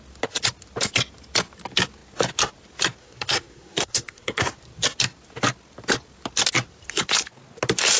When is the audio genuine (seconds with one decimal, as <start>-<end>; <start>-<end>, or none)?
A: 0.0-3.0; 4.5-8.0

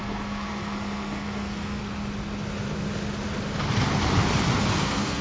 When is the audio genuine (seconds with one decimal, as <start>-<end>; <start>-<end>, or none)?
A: 1.8-4.8

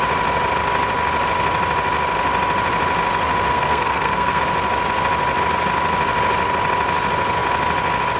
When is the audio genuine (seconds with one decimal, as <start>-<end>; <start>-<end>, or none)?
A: 0.0-3.5; 4.4-8.2